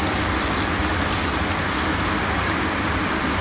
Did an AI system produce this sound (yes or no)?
no